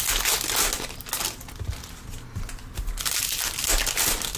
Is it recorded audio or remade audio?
recorded